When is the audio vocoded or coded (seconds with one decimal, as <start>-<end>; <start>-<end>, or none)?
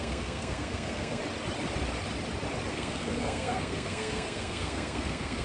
0.0-1.2; 2.7-5.4